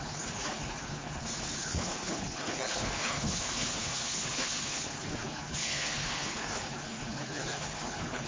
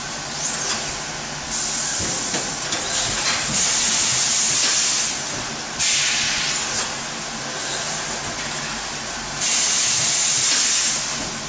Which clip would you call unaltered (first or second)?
second